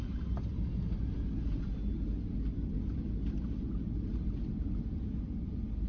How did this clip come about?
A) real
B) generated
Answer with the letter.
A